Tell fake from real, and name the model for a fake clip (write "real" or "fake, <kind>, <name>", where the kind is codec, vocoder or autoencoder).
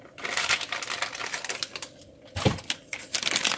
real